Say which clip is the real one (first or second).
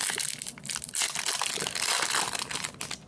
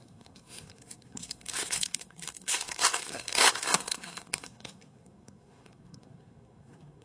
first